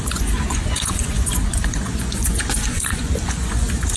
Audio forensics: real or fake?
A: fake